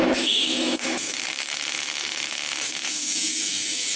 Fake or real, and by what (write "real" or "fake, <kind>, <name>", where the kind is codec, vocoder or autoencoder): fake, autoencoder, DAC-VAE